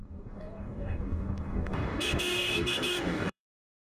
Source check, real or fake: fake